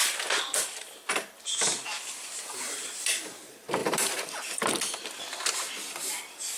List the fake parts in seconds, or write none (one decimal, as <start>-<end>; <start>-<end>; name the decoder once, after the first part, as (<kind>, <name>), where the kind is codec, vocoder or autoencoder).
0.0-3.4 (vocoder, BigVGAN v2); 3.8-5.2